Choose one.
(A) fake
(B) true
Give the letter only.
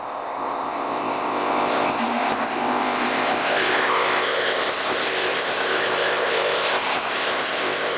A